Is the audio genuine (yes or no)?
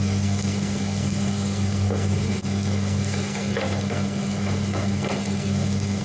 no